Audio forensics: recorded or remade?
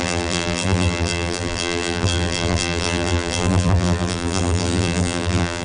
remade